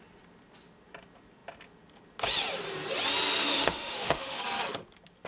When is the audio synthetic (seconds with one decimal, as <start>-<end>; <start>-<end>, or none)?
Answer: 3.4-4.4